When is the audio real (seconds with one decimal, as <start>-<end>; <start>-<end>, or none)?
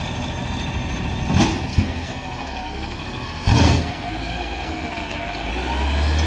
0.0-1.7; 5.5-6.3